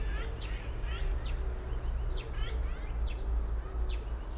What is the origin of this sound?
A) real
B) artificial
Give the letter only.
A